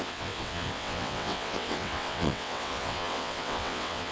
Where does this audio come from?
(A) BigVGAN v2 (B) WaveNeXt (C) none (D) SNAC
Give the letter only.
B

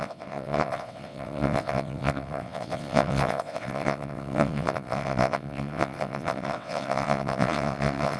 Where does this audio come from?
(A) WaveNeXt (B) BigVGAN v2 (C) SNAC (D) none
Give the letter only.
A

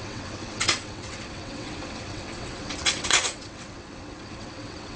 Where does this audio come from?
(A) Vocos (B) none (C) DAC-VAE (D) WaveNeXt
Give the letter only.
D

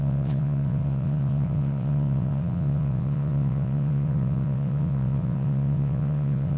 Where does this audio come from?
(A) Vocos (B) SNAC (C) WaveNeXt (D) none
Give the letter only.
C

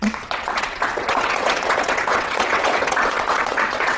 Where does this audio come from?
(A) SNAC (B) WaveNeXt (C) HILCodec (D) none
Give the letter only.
B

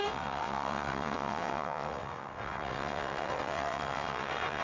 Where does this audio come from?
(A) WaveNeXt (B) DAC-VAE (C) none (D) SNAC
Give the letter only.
A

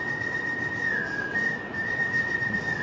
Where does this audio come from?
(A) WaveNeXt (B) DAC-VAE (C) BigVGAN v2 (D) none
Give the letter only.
A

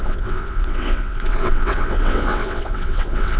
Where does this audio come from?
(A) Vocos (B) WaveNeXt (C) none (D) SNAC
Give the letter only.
B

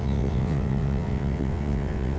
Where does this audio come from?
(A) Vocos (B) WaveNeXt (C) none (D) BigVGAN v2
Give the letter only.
B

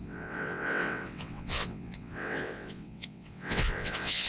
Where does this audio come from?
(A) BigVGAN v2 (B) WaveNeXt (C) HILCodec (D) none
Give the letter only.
B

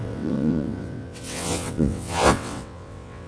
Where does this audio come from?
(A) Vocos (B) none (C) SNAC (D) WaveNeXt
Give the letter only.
D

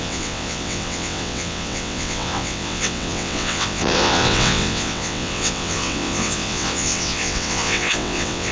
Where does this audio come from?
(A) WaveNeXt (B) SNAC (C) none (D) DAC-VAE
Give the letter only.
A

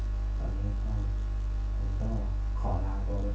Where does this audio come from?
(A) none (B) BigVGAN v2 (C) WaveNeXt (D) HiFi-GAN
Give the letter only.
A